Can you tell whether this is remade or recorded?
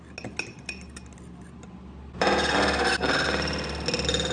recorded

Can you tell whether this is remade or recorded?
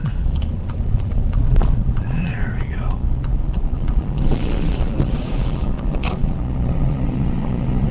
remade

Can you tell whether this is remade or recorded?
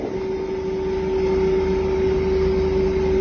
recorded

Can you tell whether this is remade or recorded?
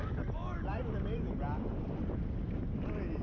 recorded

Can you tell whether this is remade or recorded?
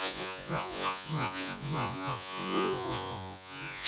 remade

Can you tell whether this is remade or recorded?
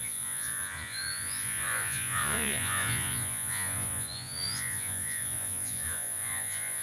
remade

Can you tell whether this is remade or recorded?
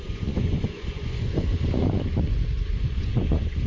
remade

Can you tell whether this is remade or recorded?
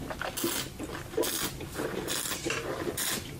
recorded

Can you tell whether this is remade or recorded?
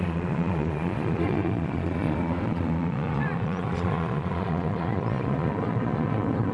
remade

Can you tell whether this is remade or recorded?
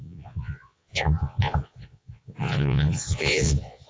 remade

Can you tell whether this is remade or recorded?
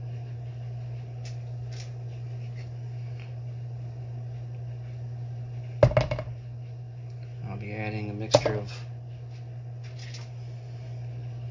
recorded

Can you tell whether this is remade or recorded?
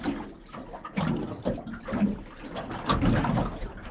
recorded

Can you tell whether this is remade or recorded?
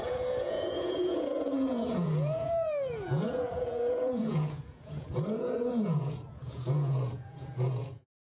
remade